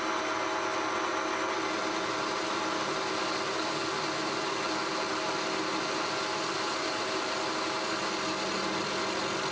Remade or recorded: recorded